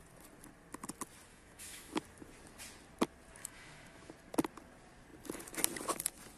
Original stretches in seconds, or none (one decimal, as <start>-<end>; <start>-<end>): 0.0-1.3; 1.9-3.4; 4.1-6.4